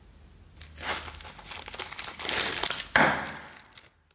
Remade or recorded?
recorded